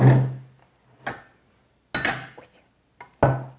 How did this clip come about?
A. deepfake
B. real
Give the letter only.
B